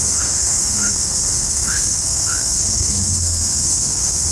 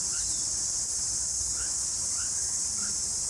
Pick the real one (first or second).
second